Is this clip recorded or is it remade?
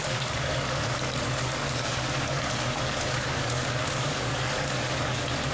remade